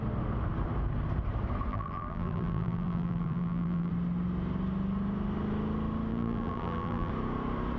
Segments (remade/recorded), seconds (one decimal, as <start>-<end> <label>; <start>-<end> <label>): 0.0-1.7 recorded; 1.7-3.9 remade; 3.9-6.1 recorded; 6.1-7.1 remade; 7.1-7.8 recorded